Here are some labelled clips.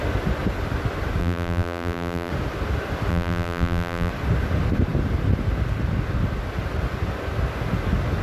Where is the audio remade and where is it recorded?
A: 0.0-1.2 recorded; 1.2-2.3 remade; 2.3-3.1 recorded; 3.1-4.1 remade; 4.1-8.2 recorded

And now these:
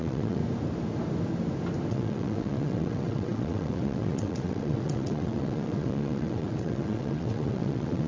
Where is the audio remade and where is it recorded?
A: 0.0-0.4 remade; 0.4-1.9 recorded; 1.9-8.1 remade

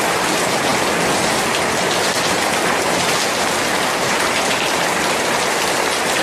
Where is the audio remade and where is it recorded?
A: 0.0-6.2 recorded